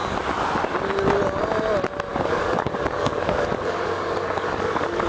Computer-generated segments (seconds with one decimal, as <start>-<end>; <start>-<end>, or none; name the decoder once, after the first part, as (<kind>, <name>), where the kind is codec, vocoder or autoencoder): 2.1-5.1 (codec, DAC)